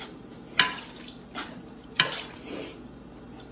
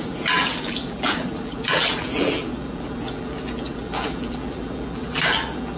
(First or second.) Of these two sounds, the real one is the first